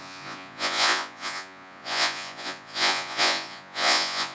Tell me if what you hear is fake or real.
fake